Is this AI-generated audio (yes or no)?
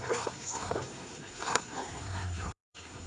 yes